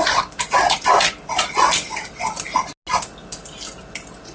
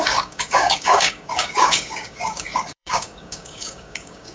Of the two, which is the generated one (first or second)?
second